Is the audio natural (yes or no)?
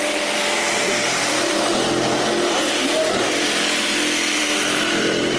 no